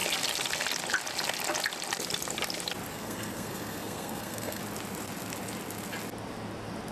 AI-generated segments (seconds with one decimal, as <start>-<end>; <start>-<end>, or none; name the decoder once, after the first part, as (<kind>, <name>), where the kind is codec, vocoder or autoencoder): 2.9-4.6 (codec, SNAC)